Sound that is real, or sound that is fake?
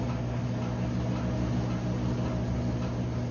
real